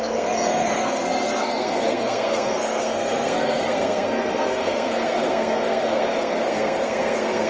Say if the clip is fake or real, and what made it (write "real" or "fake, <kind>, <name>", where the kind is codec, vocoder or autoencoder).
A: fake, codec, SNAC